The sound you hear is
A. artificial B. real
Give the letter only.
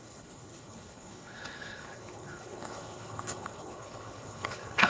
A